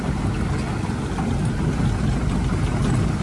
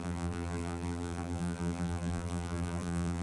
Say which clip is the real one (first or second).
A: first